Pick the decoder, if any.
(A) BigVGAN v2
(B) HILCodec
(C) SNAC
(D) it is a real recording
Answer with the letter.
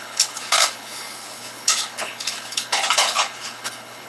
B